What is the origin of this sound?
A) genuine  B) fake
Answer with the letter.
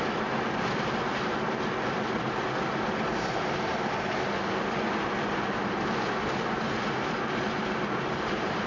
A